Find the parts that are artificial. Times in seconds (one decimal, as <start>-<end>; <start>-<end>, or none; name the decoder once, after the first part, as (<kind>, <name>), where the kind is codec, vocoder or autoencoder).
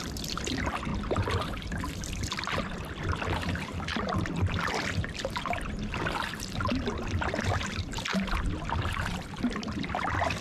0.0-3.9 (vocoder, BigVGAN v2); 4.9-8.1; 9.4-10.4